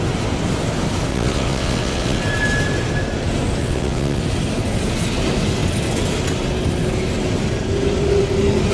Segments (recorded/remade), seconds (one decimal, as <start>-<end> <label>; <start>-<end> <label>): 0.0-1.1 recorded; 1.1-2.2 remade; 2.2-3.6 recorded; 3.6-4.2 remade; 4.2-8.7 recorded